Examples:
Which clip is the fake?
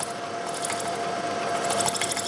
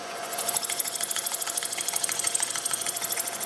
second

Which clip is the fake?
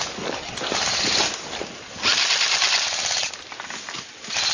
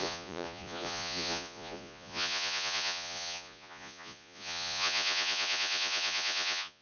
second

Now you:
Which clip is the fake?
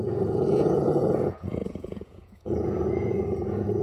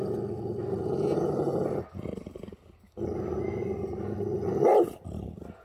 first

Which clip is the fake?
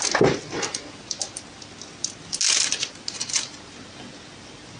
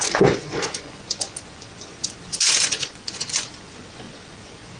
second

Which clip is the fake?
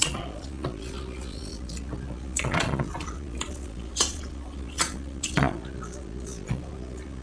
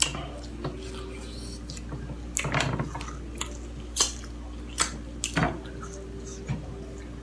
first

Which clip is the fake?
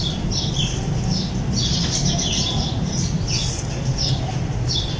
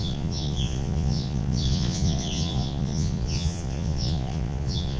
second